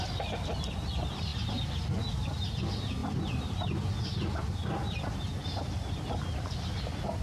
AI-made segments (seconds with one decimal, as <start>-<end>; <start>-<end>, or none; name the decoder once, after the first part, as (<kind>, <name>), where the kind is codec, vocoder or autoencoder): 3.0-5.9 (vocoder, BigVGAN v2)